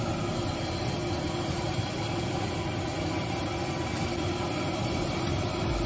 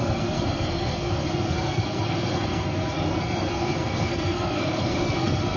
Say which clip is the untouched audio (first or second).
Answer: first